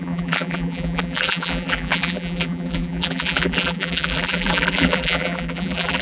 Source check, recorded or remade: remade